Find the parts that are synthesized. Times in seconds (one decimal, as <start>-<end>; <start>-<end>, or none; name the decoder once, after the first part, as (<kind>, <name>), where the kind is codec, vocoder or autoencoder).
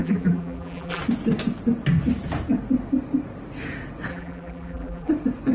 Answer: 0.0-1.0 (vocoder, BigVGAN v2); 4.1-5.1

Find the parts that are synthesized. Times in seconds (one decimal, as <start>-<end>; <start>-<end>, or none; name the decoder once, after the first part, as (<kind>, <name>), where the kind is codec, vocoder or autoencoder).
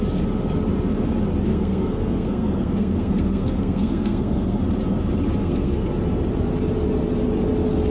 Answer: 1.5-4.6 (codec, SNAC); 5.4-5.9